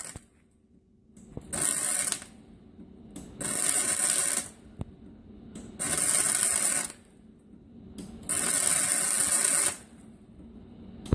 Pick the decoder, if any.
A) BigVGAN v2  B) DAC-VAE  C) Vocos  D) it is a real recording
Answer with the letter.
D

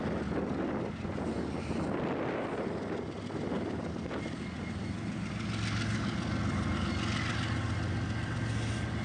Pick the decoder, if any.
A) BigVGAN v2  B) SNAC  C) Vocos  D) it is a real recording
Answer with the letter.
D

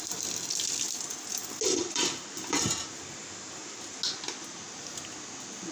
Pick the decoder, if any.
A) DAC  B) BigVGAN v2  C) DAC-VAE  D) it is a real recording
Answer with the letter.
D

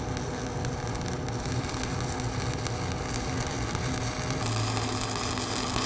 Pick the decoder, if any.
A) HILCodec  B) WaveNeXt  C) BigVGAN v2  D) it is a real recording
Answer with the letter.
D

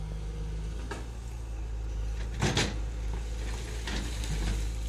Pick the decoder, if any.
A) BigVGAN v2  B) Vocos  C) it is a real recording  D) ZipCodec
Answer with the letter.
C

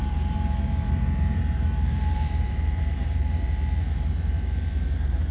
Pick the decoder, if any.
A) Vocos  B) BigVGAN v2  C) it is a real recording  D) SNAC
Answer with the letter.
B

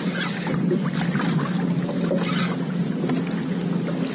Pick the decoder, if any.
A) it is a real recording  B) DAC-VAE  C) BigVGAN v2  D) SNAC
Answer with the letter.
A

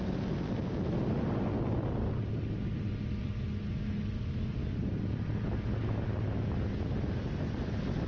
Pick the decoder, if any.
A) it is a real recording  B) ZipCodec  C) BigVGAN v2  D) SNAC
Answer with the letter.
A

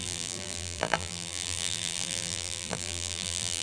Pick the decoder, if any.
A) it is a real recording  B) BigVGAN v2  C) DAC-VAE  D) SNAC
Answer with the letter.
B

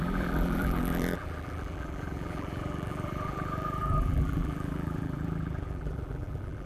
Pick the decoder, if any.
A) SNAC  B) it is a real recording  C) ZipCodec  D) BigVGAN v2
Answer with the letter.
D